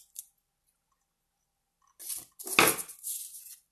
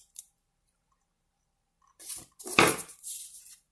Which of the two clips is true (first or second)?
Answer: first